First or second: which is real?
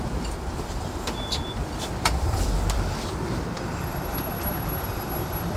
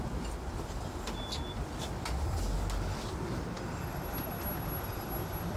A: second